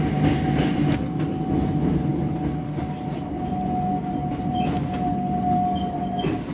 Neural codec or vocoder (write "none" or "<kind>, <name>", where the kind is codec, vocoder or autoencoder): none